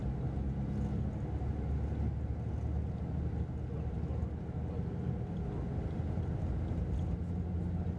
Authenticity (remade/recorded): recorded